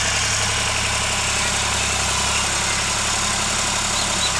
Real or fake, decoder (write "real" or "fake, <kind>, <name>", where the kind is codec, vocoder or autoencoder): real